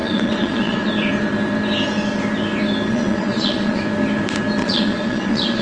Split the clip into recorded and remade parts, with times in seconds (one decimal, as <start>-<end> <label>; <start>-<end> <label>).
0.0-0.9 remade; 0.9-2.9 recorded; 2.9-3.8 remade; 3.8-4.6 recorded; 4.6-5.6 remade